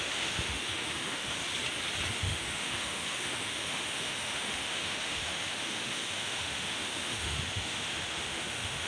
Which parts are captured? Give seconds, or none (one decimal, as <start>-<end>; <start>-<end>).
1.4-2.1